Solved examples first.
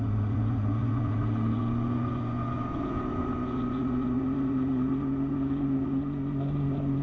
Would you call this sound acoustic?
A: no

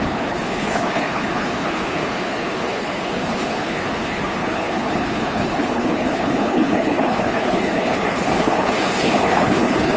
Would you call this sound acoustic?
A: no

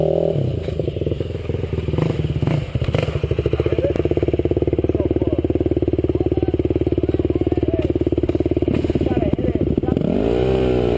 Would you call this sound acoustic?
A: yes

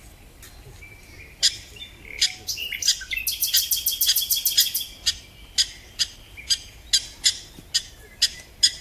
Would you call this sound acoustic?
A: yes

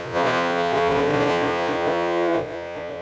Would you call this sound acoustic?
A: no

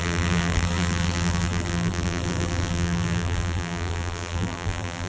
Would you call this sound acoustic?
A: no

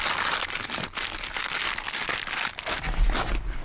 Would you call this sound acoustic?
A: yes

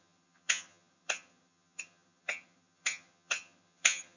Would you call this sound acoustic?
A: no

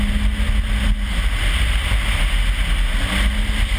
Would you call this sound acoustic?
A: yes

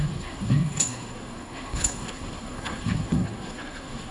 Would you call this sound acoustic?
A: no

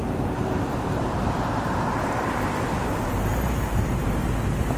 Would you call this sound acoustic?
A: no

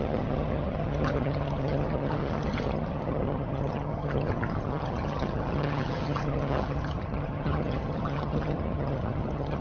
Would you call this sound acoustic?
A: no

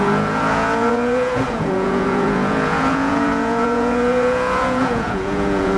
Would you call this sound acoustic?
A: no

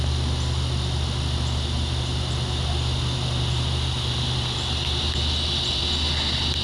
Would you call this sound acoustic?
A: yes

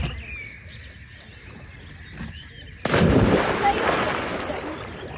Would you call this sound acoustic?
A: yes